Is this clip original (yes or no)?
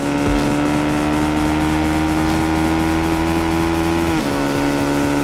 yes